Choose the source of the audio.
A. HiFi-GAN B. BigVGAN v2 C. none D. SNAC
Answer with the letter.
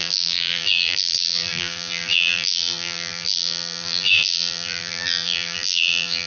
B